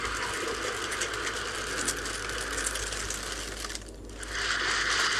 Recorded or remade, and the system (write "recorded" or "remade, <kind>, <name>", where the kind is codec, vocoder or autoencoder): recorded